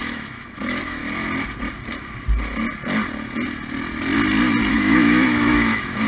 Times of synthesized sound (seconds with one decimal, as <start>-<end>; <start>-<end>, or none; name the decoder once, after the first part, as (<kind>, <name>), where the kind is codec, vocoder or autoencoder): 0.0-1.0 (autoencoder, DAC-VAE); 4.7-6.1